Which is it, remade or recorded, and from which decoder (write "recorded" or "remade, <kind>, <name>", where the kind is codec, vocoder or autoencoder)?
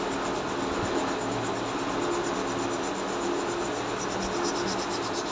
recorded